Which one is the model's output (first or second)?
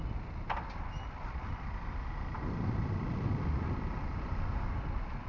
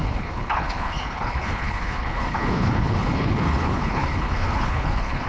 second